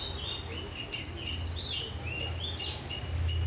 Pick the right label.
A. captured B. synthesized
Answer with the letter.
A